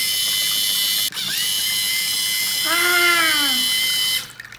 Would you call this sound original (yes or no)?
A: yes